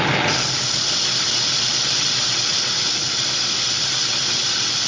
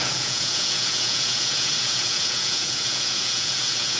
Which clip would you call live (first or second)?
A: first